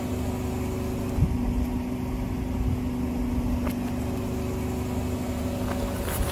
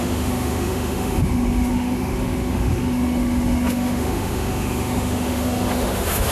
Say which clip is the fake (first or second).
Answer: second